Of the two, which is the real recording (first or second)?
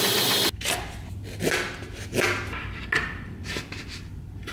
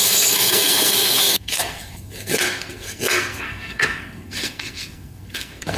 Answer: first